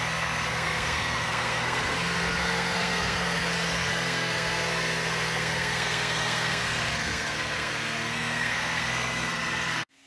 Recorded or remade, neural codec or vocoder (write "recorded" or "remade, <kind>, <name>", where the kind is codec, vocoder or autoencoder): remade, codec, SNAC